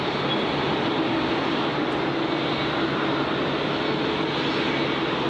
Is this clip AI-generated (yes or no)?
no